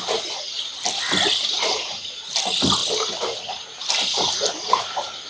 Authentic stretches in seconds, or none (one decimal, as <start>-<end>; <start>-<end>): 0.0-5.3